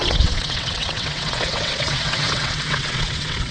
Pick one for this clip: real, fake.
fake